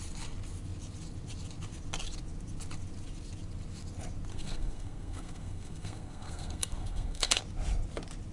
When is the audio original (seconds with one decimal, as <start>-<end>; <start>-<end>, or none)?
0.0-4.3; 7.4-8.3